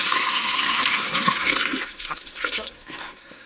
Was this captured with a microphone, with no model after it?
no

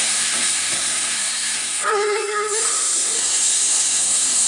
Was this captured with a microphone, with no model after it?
no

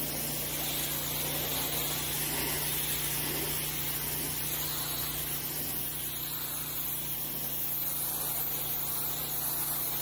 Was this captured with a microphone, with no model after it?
yes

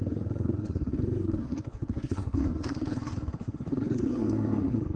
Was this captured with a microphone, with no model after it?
no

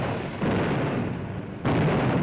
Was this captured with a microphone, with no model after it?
yes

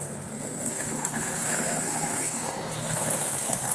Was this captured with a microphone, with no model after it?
no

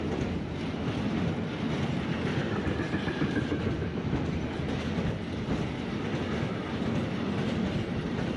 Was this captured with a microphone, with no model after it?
yes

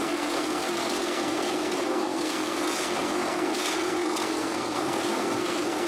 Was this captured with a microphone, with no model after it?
no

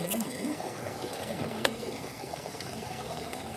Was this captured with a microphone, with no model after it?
no